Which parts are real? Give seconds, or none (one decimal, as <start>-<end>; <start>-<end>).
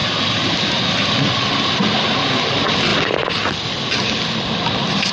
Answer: 0.0-5.1